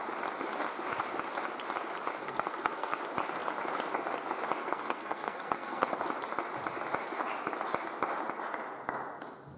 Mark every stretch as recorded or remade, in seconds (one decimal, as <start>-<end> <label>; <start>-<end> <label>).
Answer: 0.0-2.2 recorded; 2.2-3.0 remade; 3.0-4.6 recorded; 4.6-6.0 remade; 6.0-9.6 recorded

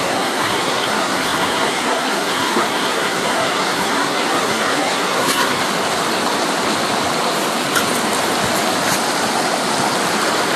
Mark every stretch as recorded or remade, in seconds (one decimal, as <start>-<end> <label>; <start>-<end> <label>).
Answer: 0.0-5.6 remade; 5.6-10.6 recorded

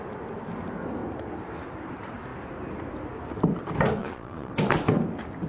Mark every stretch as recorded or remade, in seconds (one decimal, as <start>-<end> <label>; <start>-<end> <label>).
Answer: 0.0-4.0 recorded; 4.0-4.5 remade; 4.5-5.5 recorded

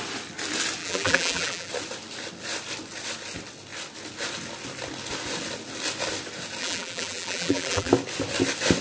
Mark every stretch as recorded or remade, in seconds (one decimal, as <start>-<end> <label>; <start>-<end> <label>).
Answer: 0.0-0.8 recorded; 0.8-1.7 remade; 1.7-6.6 recorded; 6.6-7.9 remade; 7.9-8.8 recorded

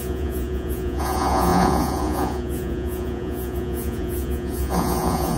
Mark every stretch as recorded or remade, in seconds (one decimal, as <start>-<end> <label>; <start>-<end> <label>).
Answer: 0.0-5.4 remade

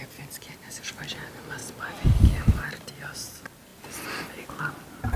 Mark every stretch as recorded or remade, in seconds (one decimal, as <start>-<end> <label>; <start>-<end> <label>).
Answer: 0.0-5.2 recorded

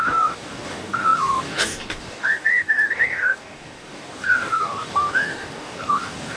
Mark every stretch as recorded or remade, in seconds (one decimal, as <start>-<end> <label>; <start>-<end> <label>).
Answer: 0.0-6.4 remade